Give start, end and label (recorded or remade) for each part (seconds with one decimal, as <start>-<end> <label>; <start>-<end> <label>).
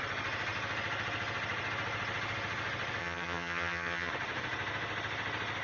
0.0-3.0 recorded; 3.0-4.1 remade; 4.1-5.6 recorded